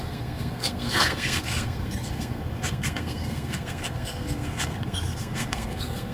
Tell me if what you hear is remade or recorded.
remade